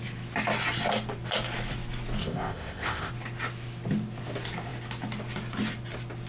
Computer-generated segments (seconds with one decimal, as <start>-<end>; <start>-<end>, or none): 2.2-3.1